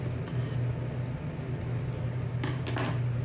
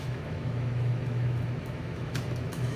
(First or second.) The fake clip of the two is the second